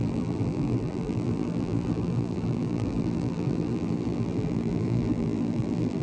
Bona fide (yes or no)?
no